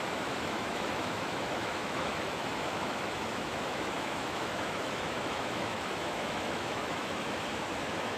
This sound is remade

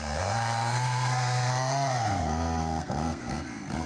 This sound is remade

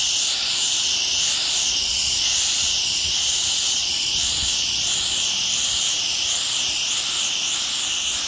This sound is recorded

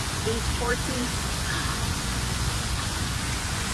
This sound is remade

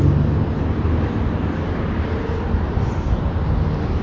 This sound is recorded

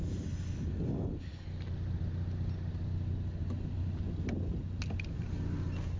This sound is recorded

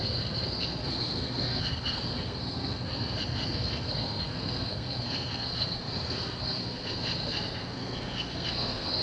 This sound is remade